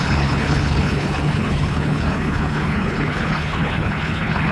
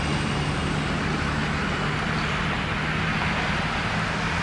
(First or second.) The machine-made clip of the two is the first